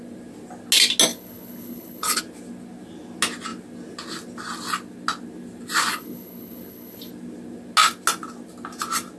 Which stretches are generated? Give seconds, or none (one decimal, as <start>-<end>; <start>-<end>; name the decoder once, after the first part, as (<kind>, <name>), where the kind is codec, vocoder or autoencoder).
1.1-2.2 (codec, HILCodec); 5.9-7.1